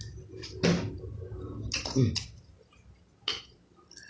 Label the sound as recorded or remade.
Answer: recorded